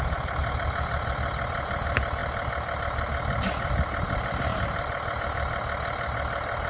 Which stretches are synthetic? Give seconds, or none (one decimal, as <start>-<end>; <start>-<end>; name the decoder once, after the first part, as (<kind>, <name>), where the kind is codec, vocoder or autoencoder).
none